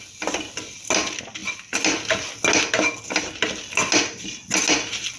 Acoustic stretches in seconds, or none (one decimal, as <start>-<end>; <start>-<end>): 0.0-5.2